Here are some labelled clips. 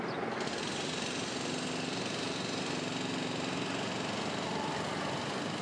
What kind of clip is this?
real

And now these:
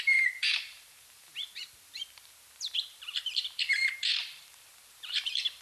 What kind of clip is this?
fake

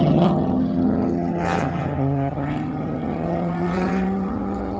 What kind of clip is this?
fake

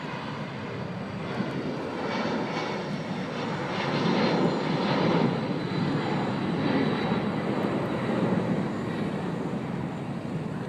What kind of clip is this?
real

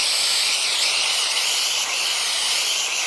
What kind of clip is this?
real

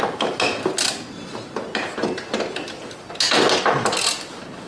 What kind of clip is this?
real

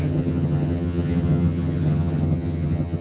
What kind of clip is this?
fake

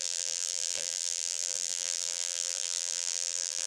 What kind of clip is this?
fake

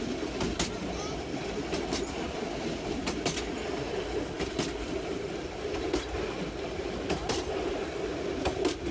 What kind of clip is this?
real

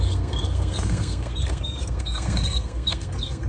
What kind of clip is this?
fake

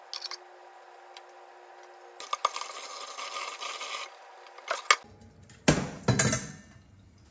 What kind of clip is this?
real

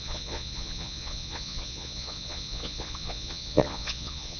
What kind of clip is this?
fake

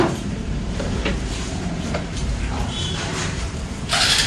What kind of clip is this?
fake